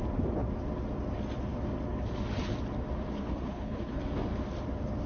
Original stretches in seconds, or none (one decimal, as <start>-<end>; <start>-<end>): 0.0-3.2; 4.0-5.1